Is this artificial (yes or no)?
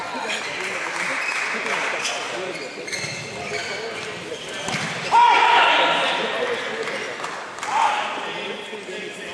no